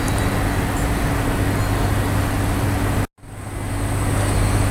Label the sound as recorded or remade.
recorded